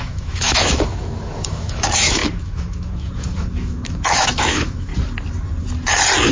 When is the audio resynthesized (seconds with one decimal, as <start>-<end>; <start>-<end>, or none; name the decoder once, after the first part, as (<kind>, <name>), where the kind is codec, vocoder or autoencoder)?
0.0-4.9 (autoencoder, DAC-VAE)

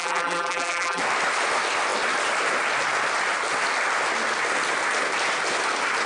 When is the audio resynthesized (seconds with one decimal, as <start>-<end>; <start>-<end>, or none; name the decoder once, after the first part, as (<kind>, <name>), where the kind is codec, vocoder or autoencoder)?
0.0-1.0 (vocoder, BigVGAN v2)

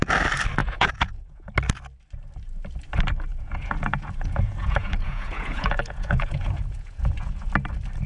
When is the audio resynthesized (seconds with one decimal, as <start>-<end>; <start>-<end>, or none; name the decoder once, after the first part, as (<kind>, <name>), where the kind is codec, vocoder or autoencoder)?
0.6-1.5 (vocoder, Vocos); 3.3-7.5

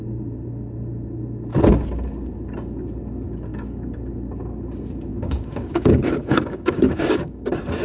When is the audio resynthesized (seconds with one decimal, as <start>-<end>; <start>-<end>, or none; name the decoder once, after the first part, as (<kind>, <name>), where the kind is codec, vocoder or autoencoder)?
3.5-4.1 (codec, DAC); 5.1-7.3

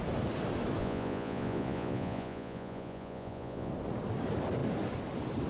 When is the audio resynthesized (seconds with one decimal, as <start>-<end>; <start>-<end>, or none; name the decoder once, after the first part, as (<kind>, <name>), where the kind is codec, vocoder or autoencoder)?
0.8-3.7 (vocoder, Vocos)

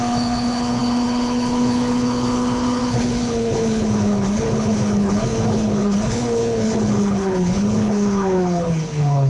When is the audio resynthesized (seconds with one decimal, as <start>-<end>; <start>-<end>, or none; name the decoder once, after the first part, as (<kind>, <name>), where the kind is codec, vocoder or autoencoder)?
0.0-9.3 (codec, HILCodec)